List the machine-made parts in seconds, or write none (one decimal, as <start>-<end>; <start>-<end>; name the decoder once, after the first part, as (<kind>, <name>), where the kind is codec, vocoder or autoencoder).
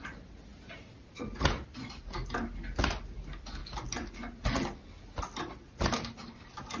none